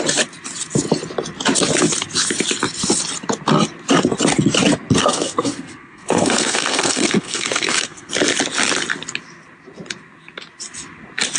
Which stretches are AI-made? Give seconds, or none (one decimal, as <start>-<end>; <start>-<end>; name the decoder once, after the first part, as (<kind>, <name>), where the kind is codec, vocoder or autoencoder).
5.0-8.1 (codec, SNAC)